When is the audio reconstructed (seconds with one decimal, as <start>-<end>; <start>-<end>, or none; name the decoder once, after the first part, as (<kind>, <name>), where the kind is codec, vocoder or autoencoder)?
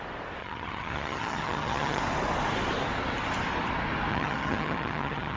0.4-2.0 (vocoder, HiFi-GAN); 4.1-5.4